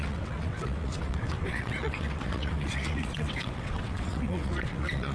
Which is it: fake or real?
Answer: fake